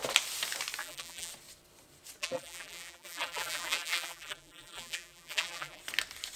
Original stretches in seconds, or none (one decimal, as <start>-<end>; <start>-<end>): 0.0-0.8; 1.3-2.2; 5.8-6.4